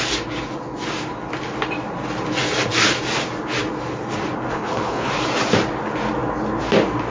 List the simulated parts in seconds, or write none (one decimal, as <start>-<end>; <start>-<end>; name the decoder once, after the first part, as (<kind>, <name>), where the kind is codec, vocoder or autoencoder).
4.5-5.1 (codec, HILCodec)